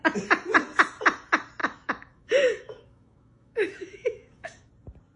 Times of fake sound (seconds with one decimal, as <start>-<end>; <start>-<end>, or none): 1.6-4.7